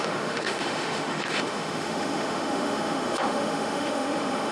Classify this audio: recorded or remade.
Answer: remade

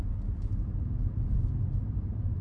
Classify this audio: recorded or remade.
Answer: remade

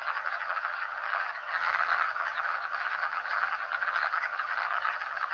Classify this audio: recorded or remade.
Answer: remade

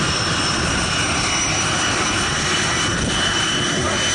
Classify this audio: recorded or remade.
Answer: recorded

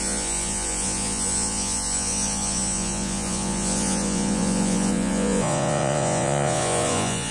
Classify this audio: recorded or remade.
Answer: remade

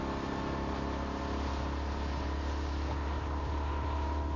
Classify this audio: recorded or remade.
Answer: recorded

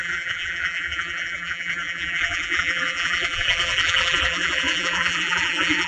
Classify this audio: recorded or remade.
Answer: remade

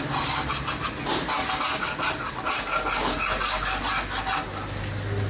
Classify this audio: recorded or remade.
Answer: recorded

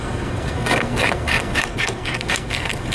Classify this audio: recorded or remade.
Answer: remade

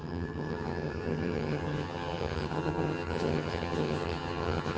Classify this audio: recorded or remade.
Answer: remade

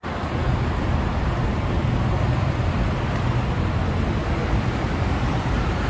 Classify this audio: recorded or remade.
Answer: recorded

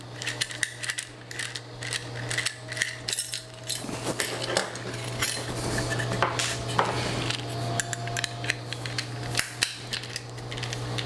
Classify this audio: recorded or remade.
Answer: recorded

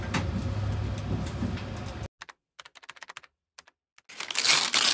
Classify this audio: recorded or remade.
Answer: recorded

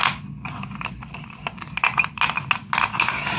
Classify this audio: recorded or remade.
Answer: recorded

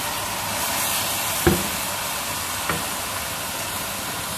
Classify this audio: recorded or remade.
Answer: recorded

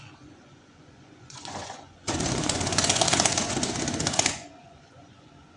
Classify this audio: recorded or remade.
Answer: remade